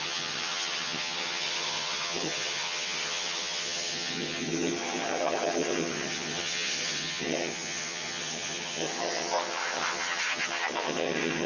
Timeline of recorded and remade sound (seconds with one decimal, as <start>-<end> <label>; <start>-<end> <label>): 0.0-11.5 remade